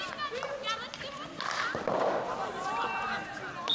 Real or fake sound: real